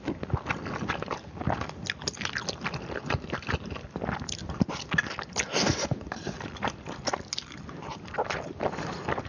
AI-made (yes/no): no